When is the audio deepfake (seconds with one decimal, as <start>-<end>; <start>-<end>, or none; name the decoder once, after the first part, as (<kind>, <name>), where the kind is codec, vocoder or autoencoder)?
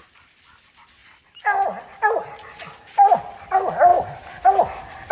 none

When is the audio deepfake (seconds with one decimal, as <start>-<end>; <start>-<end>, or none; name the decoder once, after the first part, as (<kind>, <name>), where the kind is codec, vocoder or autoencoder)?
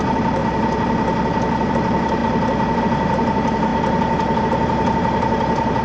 0.0-0.4 (vocoder, BigVGAN v2); 1.7-2.2; 2.8-3.7; 4.4-5.8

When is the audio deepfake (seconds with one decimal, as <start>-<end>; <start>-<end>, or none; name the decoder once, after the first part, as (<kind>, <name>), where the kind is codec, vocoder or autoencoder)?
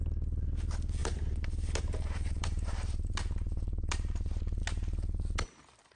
1.0-4.6 (vocoder, BigVGAN v2)